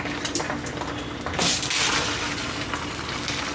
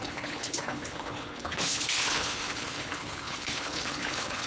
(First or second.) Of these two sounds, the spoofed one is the second